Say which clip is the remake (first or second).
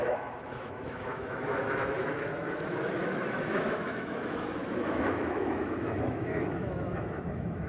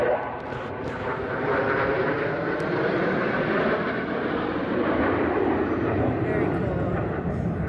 first